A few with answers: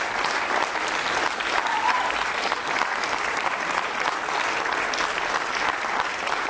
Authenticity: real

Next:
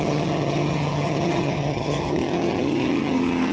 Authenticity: fake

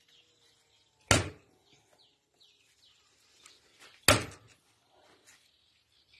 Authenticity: real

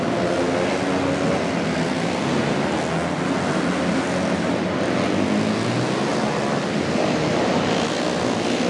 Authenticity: real